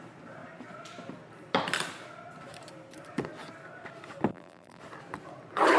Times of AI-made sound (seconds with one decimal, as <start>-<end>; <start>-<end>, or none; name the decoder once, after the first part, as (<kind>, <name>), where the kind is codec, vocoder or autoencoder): 4.3-4.8 (vocoder, BigVGAN v2)